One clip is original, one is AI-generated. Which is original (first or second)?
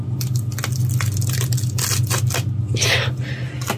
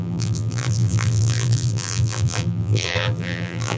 first